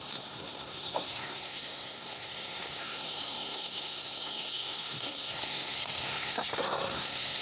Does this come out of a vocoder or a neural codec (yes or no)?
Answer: yes